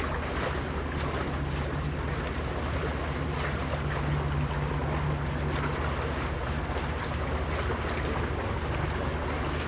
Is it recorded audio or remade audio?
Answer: recorded